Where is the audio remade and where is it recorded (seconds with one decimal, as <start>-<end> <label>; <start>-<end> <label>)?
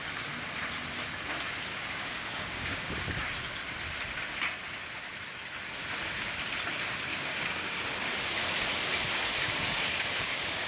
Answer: 0.0-1.7 recorded; 1.7-3.1 remade; 3.1-7.1 recorded; 7.1-7.8 remade; 7.8-9.4 recorded; 9.4-10.7 remade